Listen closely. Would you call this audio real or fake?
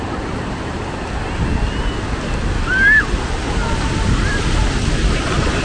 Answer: real